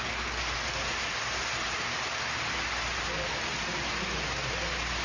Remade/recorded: recorded